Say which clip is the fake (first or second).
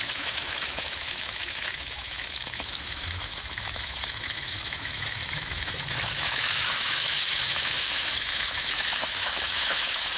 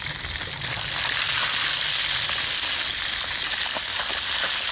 first